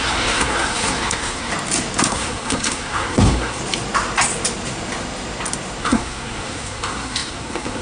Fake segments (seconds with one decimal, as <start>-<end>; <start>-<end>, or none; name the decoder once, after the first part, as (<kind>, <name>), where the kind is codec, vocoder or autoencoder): 0.0-1.5 (codec, SNAC); 2.1-3.6; 5.8-7.8